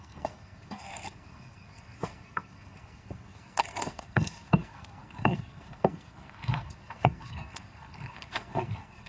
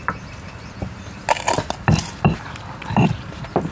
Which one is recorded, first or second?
second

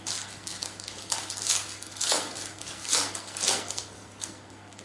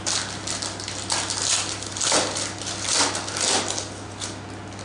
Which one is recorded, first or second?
second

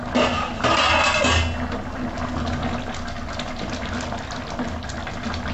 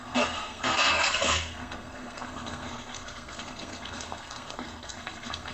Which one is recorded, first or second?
first